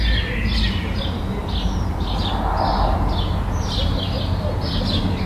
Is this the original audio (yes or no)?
yes